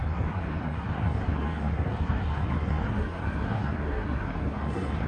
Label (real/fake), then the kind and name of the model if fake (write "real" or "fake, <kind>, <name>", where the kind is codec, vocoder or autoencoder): fake, codec, SNAC